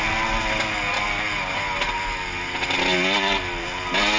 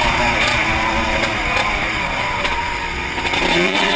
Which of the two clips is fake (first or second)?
second